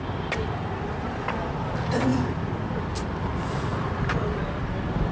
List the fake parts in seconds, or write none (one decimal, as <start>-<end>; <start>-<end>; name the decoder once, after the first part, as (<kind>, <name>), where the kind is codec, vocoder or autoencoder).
none